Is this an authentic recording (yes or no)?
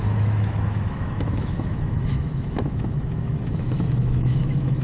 no